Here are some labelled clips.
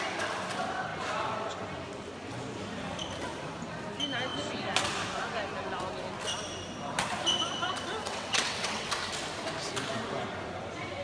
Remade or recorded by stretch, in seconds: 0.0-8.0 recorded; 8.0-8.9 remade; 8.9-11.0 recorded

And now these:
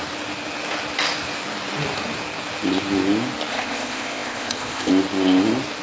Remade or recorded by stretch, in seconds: 0.0-3.5 recorded; 3.5-4.9 remade; 4.9-5.8 recorded

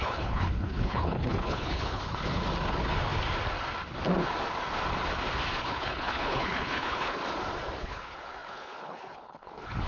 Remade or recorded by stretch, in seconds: 0.0-2.4 remade; 2.4-5.6 recorded; 5.6-7.2 remade; 7.2-7.8 recorded; 7.8-9.9 remade

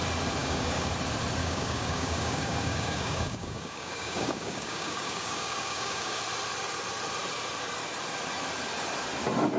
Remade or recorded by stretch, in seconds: 0.0-0.4 recorded; 0.4-0.9 remade; 0.9-1.4 recorded; 1.4-6.2 remade; 6.2-9.6 recorded

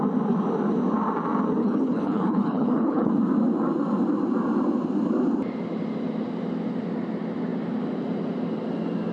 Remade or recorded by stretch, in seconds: 0.0-1.6 recorded; 1.6-3.1 remade; 3.1-9.1 recorded